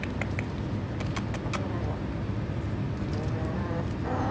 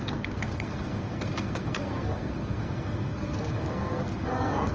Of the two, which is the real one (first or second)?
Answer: first